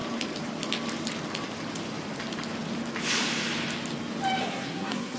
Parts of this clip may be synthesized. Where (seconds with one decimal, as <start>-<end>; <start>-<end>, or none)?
4.4-5.2